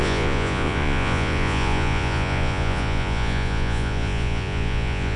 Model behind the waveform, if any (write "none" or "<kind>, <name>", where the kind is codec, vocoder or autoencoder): vocoder, Vocos